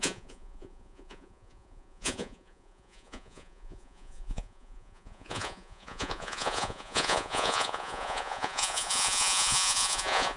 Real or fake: fake